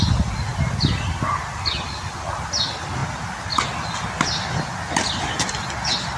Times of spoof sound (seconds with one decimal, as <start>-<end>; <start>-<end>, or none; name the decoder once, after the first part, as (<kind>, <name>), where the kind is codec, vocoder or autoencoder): none